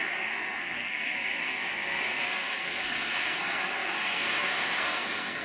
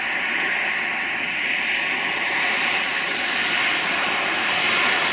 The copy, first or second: first